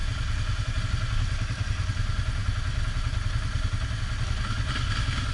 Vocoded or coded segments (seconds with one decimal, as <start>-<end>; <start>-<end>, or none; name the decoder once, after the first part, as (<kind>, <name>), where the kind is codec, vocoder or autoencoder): none